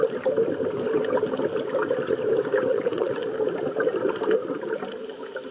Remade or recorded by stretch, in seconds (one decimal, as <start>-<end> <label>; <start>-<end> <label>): 0.0-2.7 recorded; 2.7-3.3 remade; 3.3-5.5 recorded